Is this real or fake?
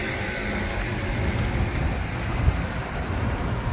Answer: real